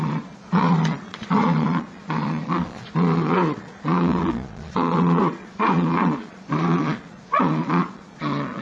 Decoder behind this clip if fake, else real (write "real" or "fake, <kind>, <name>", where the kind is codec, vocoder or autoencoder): fake, vocoder, Vocos